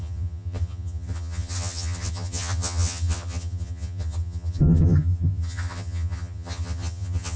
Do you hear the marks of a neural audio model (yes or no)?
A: yes